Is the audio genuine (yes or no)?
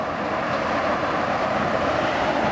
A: no